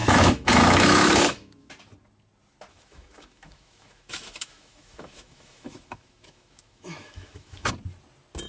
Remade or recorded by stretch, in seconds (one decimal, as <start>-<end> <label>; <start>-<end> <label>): 0.0-1.7 remade; 1.7-2.7 recorded; 2.7-7.7 remade; 7.7-8.5 recorded